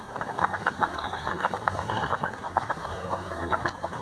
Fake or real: fake